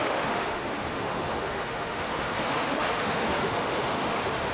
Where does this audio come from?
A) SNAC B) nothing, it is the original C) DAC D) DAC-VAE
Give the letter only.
D